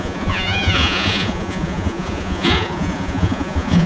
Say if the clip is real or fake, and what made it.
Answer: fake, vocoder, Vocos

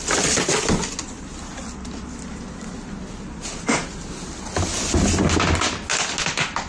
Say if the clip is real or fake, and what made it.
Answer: real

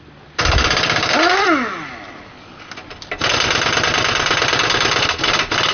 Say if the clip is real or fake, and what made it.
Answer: real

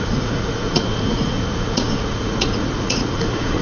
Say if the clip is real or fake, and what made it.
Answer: fake, vocoder, Vocos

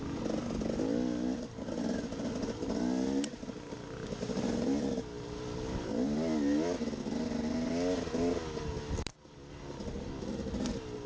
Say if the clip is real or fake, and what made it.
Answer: real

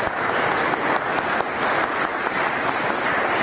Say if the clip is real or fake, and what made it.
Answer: real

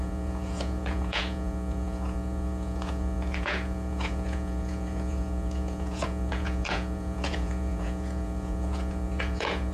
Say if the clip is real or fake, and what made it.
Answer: fake, vocoder, Vocos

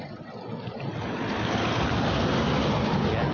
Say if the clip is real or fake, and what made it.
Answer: real